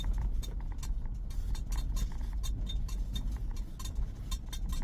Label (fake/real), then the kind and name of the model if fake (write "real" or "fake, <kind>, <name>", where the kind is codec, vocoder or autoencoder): real